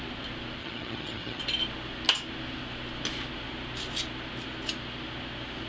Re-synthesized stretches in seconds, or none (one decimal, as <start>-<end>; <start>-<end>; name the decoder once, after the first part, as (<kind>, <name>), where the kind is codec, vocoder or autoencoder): 0.6-1.4 (vocoder, HiFi-GAN)